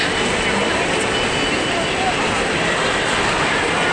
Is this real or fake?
real